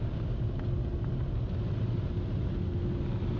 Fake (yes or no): no